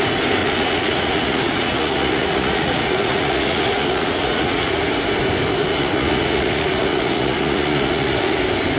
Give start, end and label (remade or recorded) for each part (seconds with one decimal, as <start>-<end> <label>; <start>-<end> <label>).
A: 0.0-0.4 recorded; 0.4-4.8 remade; 4.8-5.6 recorded; 5.6-8.4 remade; 8.4-8.8 recorded